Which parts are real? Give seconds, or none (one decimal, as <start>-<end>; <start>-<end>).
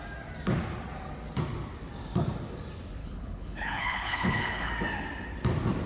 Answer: 0.0-3.0; 4.7-5.9